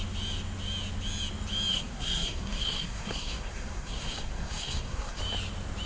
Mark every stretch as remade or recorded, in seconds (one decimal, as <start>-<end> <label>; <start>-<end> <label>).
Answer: 0.0-1.7 recorded; 1.7-5.2 remade; 5.2-5.9 recorded